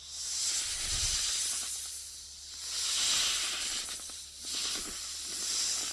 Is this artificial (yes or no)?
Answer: no